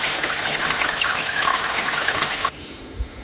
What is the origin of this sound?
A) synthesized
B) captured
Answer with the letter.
A